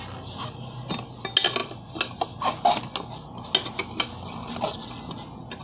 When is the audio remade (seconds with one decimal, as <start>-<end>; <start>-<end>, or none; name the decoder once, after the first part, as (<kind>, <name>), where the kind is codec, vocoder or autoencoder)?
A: none